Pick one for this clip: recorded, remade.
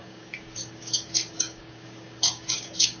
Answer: remade